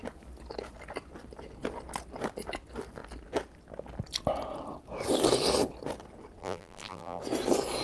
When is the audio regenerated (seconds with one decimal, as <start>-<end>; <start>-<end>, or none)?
6.4-7.2